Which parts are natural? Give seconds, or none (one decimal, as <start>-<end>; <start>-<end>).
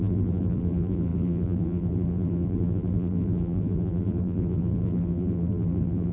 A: none